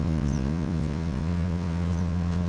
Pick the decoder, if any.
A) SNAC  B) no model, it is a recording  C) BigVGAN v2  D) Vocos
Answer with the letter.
D